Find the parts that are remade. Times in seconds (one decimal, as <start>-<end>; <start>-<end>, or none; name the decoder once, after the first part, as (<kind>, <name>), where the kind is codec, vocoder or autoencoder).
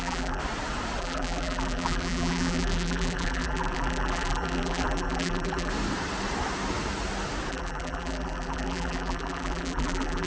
0.0-0.4 (vocoder, BigVGAN v2); 1.0-5.7; 7.5-10.3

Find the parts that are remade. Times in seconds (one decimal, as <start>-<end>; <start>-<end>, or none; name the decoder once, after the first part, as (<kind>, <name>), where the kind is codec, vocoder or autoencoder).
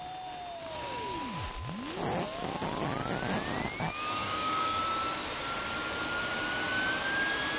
0.6-1.2 (codec, DAC); 4.2-4.8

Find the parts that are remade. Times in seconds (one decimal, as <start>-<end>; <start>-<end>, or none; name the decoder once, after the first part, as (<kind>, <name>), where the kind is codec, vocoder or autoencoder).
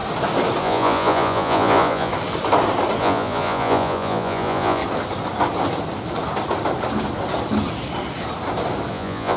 0.6-2.1 (vocoder, Vocos); 3.0-4.8; 8.9-9.4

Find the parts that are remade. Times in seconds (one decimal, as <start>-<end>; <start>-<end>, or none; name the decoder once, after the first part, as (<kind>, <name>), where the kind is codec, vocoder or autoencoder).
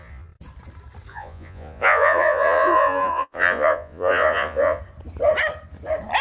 1.1-4.8 (vocoder, Vocos)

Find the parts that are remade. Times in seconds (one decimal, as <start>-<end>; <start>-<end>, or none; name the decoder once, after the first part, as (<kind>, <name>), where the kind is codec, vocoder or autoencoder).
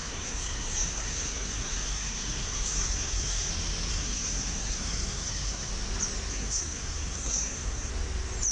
0.0-3.5 (codec, SNAC); 3.9-5.7; 6.3-7.9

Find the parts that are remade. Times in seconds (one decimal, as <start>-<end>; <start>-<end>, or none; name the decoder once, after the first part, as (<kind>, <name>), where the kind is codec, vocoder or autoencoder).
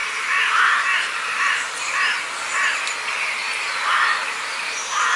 0.0-1.9 (vocoder, BigVGAN v2); 3.4-5.2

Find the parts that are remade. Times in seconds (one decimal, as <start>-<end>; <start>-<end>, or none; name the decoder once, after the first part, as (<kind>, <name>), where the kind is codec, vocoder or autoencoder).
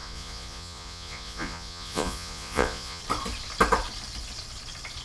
0.0-3.0 (vocoder, Vocos)